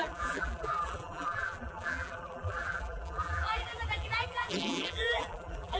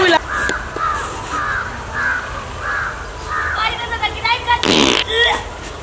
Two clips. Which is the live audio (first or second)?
second